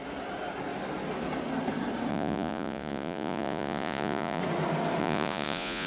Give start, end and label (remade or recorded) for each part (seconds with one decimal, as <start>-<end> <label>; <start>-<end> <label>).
0.0-2.1 recorded; 2.1-4.4 remade; 4.4-5.0 recorded; 5.0-5.9 remade